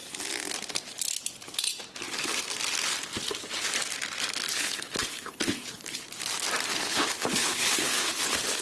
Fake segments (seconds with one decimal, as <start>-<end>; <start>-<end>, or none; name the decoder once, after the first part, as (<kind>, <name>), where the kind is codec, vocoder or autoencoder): 4.5-6.0 (codec, HILCodec); 6.7-8.2